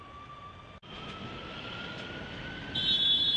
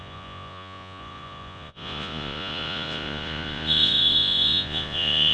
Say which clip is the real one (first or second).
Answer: first